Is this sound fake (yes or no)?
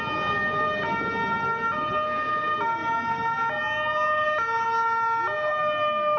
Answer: no